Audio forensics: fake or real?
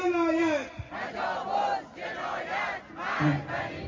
real